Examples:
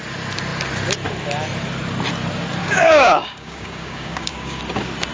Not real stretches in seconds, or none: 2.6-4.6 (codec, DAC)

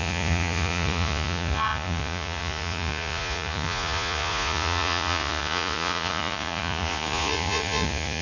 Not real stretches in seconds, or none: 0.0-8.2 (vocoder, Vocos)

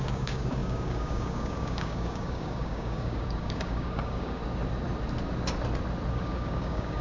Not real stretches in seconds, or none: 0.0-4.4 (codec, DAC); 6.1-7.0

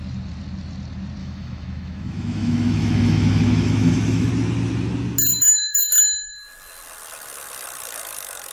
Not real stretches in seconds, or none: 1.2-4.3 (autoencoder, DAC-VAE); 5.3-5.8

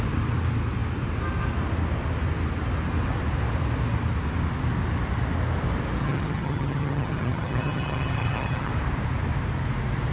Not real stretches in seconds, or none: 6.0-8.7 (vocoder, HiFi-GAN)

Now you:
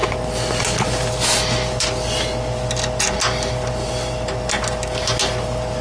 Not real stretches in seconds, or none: none

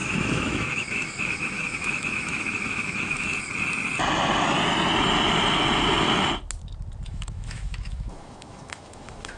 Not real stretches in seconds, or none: 0.0-3.3 (autoencoder, DAC-VAE); 7.1-9.4